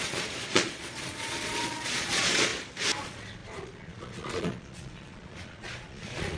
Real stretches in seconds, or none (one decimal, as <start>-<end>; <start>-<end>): 2.5-3.0